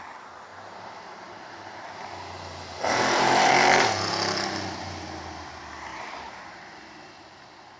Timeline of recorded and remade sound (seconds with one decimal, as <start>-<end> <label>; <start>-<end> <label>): 0.0-0.5 recorded; 0.5-3.5 remade; 3.5-5.9 recorded; 5.9-6.6 remade; 6.6-7.8 recorded